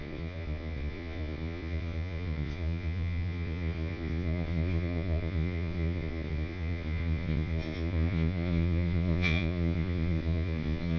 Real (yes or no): no